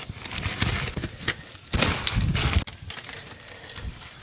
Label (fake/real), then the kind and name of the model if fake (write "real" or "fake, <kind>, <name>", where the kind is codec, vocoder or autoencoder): real